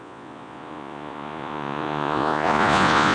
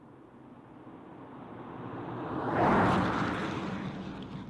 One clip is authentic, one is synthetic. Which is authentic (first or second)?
second